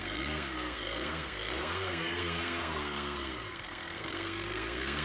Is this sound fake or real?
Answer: fake